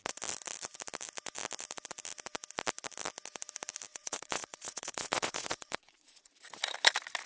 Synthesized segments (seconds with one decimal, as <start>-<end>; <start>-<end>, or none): 3.9-6.3